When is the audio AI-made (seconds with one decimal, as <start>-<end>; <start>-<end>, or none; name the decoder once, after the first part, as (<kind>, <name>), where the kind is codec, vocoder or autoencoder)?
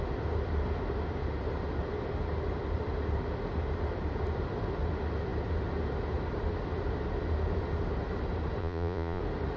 8.6-9.2 (vocoder, Vocos)